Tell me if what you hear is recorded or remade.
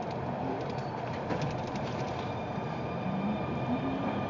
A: remade